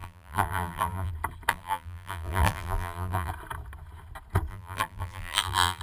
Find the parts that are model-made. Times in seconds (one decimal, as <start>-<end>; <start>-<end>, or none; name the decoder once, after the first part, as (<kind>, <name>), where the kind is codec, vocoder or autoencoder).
0.0-1.1 (vocoder, BigVGAN v2); 1.5-3.3; 4.5-5.8